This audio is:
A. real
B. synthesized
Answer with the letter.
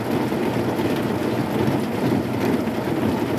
A